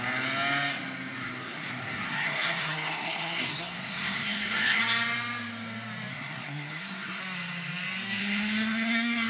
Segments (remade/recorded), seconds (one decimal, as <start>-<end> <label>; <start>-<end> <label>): 0.0-1.2 recorded; 1.2-4.8 remade; 4.8-6.1 recorded; 6.1-7.2 remade; 7.2-8.2 recorded; 8.2-9.3 remade